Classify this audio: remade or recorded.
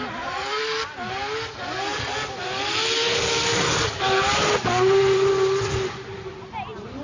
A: recorded